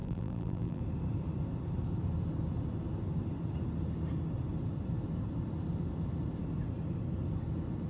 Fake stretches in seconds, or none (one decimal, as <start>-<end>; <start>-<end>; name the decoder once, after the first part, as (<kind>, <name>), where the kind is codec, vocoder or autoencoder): 0.0-0.8 (vocoder, BigVGAN v2)